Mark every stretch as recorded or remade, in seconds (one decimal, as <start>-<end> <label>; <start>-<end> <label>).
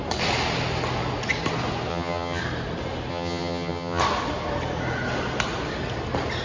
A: 0.0-1.9 recorded; 1.9-2.4 remade; 2.4-3.1 recorded; 3.1-4.0 remade; 4.0-6.4 recorded